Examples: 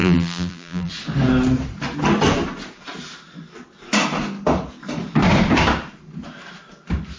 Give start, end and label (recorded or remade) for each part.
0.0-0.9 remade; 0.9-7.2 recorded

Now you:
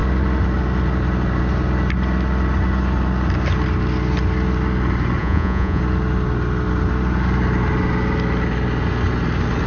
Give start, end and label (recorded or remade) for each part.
0.0-5.2 recorded; 5.2-5.8 remade; 5.8-9.7 recorded

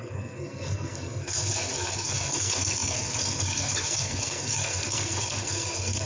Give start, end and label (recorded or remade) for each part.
0.0-6.1 remade

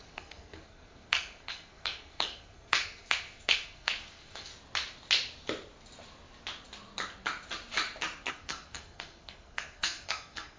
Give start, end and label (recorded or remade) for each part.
0.0-4.5 remade; 4.5-8.3 recorded; 8.3-10.6 remade

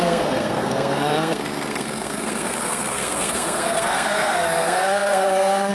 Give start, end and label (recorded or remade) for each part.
0.0-5.7 remade

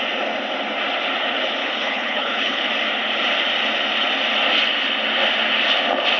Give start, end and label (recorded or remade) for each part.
0.0-1.6 recorded; 1.6-2.7 remade; 2.7-6.2 recorded

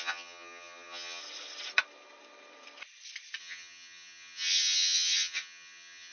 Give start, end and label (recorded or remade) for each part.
0.0-1.2 remade; 1.2-3.4 recorded; 3.4-6.1 remade